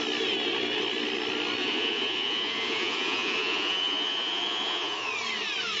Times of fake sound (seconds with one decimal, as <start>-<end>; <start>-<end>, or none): 1.6-5.1